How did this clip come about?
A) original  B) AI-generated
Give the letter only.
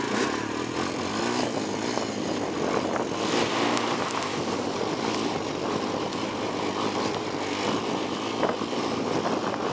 A